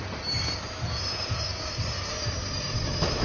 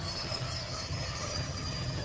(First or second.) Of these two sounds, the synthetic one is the second